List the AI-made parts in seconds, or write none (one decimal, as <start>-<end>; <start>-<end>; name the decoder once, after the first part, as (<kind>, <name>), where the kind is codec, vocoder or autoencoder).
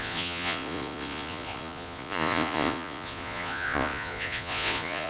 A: 0.0-5.1 (vocoder, Vocos)